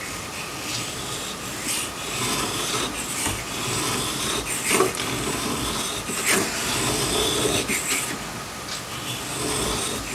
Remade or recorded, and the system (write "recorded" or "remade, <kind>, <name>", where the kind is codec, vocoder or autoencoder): recorded